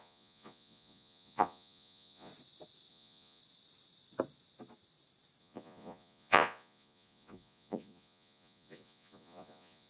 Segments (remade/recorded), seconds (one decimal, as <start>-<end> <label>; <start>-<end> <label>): 0.0-2.3 remade; 2.3-2.9 recorded; 2.9-3.4 remade; 3.4-5.4 recorded; 5.4-9.9 remade